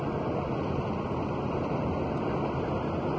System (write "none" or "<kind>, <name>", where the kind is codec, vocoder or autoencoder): none